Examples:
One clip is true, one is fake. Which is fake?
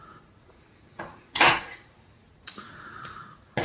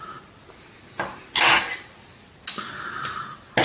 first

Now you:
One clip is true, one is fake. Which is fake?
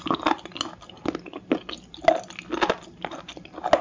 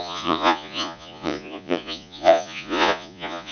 second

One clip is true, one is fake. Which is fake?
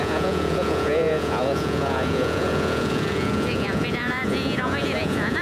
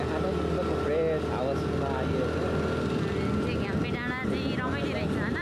first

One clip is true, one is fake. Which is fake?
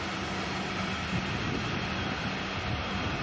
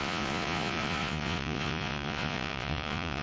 second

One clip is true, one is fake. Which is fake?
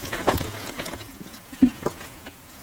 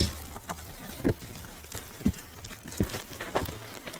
first